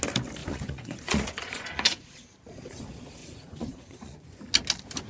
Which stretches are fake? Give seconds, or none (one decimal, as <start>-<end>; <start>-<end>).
0.4-2.0; 3.2-4.4